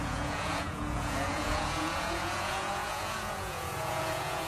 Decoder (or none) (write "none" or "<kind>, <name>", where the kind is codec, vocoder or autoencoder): vocoder, Vocos